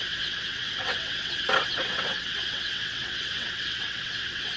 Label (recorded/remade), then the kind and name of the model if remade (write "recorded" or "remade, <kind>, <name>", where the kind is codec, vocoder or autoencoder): remade, vocoder, WaveNeXt